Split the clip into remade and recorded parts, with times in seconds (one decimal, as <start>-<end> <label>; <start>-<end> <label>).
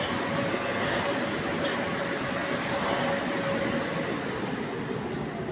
0.0-0.5 recorded; 0.5-1.0 remade; 1.0-5.5 recorded